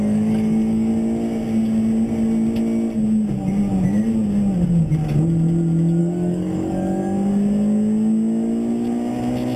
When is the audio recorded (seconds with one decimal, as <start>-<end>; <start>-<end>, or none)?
0.9-6.0; 7.0-9.6